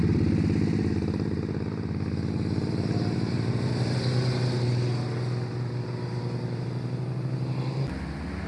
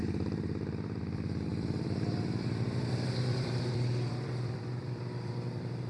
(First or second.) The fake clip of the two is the second